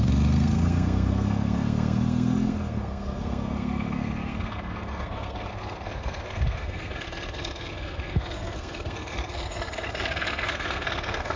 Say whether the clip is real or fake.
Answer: fake